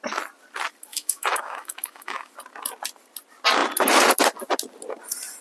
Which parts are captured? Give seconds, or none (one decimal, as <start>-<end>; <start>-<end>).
0.0-0.9; 2.3-5.4